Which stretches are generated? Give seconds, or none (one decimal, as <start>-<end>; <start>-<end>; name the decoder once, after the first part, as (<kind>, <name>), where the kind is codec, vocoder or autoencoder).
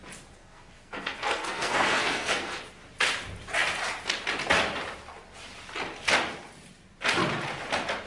0.4-2.6 (codec, SNAC)